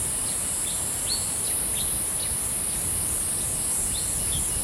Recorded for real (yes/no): yes